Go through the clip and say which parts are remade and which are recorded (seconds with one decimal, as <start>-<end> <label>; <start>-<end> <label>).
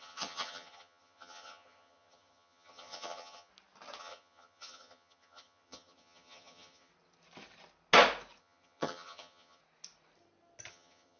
0.0-3.5 remade; 3.5-4.0 recorded; 4.0-6.9 remade; 6.9-8.4 recorded; 8.4-9.6 remade; 9.6-10.7 recorded; 10.7-11.2 remade